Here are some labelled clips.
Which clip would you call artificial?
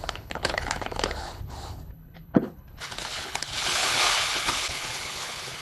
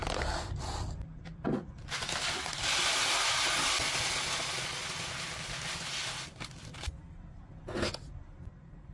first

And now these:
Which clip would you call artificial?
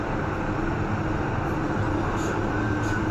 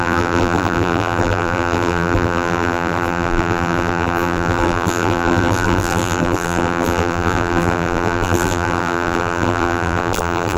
second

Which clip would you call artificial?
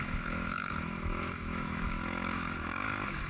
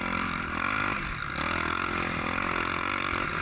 first